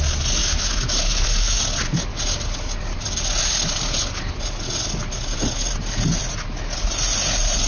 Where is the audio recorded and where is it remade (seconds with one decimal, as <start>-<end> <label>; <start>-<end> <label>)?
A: 0.0-0.4 recorded; 0.4-1.6 remade; 1.6-7.7 recorded